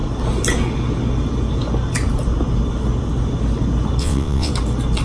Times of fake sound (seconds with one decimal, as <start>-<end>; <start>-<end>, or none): 4.0-4.5